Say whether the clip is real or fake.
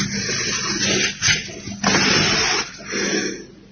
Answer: real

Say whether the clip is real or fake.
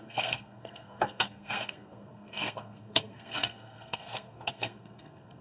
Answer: fake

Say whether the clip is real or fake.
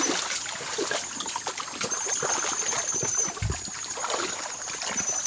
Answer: real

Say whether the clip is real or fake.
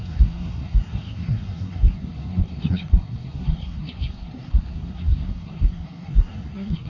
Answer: fake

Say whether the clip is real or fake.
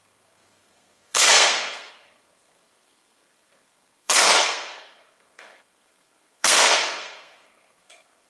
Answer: fake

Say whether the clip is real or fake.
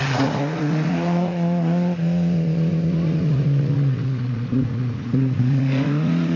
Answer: fake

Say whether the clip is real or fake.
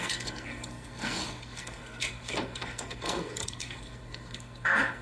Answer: fake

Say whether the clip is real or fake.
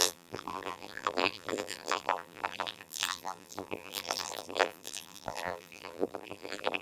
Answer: fake